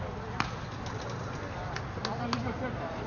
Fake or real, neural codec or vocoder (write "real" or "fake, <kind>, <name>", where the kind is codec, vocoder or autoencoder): real